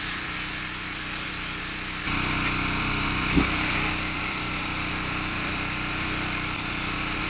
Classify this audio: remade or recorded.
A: remade